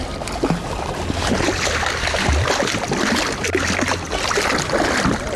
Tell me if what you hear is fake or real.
real